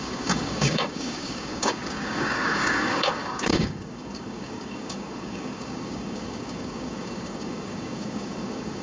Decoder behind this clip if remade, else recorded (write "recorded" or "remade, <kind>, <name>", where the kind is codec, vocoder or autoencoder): remade, codec, DAC